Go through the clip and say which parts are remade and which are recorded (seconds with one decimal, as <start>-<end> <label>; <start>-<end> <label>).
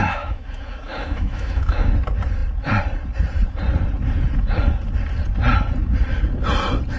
0.0-1.9 remade; 1.9-7.0 recorded